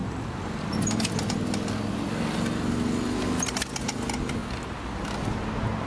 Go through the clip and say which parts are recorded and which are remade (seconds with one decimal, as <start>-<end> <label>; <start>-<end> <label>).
0.0-5.9 recorded